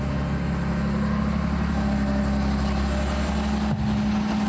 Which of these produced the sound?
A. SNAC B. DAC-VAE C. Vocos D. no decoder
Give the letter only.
D